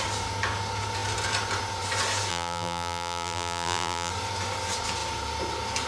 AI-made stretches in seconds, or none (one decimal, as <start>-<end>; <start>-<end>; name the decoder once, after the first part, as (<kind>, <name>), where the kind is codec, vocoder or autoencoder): 2.3-4.1 (vocoder, BigVGAN v2)